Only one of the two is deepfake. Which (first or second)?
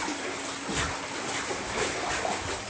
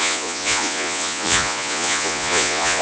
second